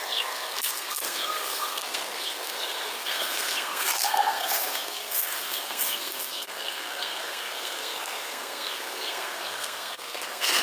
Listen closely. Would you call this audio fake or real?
fake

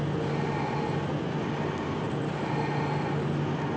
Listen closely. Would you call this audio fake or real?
real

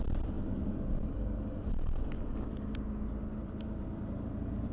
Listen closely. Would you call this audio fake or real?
real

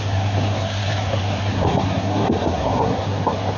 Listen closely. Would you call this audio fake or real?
fake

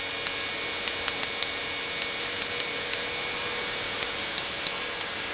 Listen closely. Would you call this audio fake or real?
real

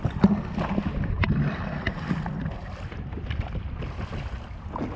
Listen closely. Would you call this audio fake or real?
real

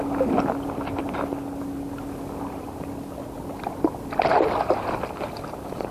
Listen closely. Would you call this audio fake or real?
real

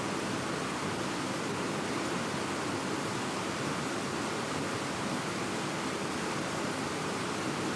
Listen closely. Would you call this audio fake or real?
real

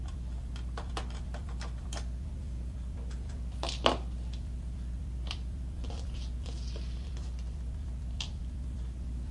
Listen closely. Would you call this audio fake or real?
fake